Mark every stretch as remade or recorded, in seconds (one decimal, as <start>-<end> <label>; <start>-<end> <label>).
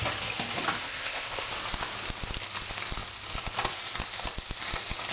0.0-0.8 recorded; 0.8-1.5 remade; 1.5-5.1 recorded